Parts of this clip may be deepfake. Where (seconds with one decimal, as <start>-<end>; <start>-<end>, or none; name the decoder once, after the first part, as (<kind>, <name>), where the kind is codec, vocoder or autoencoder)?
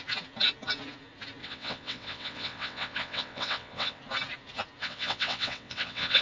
1.4-4.0 (vocoder, WaveNeXt); 4.8-6.2